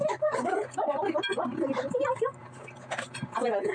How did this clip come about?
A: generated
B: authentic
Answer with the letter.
B